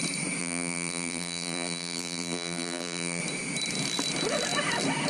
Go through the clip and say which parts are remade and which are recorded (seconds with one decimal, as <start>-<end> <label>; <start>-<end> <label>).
0.0-0.4 recorded; 0.4-3.2 remade; 3.2-5.1 recorded